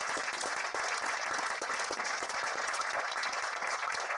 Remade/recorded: remade